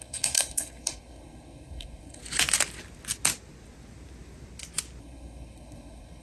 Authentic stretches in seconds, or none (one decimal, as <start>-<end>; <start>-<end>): 2.2-5.0